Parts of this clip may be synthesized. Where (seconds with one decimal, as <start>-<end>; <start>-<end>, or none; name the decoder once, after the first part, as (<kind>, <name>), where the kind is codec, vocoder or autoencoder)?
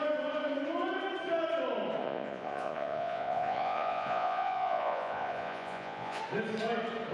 2.0-6.2 (vocoder, Vocos)